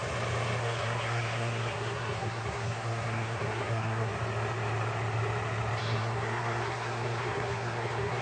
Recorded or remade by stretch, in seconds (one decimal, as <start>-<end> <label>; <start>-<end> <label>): 0.0-0.6 recorded; 0.6-4.1 remade; 4.1-5.8 recorded; 5.8-8.2 remade